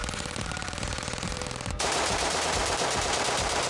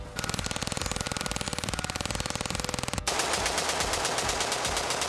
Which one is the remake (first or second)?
first